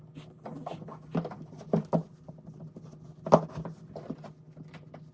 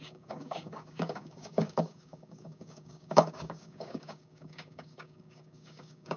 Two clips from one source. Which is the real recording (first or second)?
first